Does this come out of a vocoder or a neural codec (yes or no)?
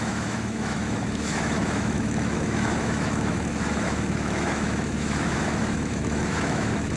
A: yes